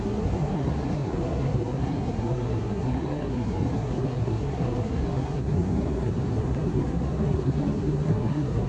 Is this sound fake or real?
fake